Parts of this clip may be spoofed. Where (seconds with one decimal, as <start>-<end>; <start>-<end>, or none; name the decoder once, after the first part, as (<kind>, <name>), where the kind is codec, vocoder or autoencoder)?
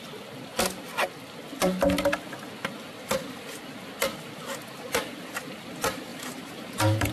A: 6.1-7.1 (vocoder, BigVGAN v2)